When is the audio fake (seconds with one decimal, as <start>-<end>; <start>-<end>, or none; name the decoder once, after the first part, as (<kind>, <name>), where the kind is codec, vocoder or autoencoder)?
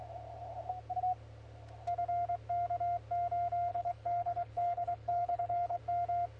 3.7-5.8 (codec, HILCodec)